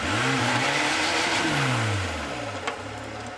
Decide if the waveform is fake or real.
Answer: real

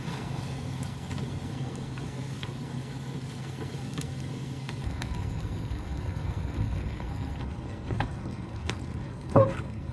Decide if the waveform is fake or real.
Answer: fake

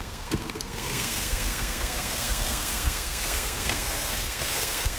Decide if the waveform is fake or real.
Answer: fake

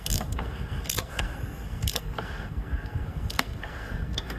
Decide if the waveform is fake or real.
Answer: fake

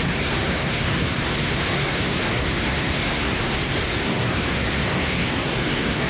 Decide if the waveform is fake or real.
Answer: fake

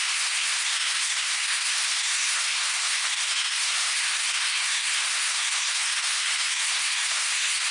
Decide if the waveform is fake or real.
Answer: fake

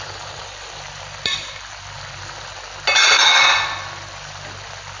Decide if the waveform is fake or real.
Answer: real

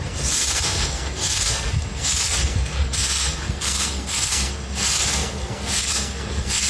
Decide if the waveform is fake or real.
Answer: fake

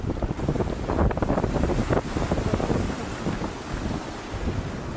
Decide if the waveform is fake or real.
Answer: real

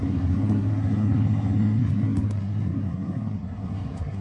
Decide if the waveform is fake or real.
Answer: fake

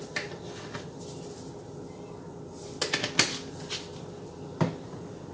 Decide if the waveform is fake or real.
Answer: real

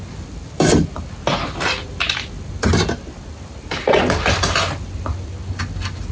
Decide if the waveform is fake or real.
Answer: real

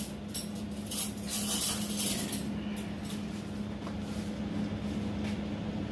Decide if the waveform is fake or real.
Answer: real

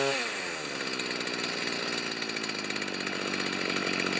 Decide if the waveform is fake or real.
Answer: real